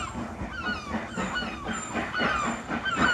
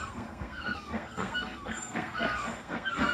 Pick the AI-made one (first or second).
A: second